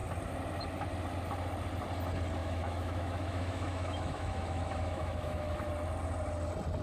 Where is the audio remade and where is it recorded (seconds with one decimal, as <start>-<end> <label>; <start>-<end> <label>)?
0.0-2.4 recorded; 2.4-5.7 remade; 5.7-6.8 recorded